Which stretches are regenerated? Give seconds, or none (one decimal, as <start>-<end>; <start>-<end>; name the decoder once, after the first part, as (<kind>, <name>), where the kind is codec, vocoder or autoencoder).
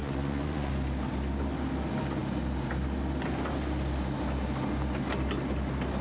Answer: 0.0-0.7 (vocoder, Vocos)